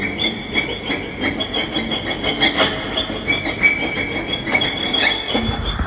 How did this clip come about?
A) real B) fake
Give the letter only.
A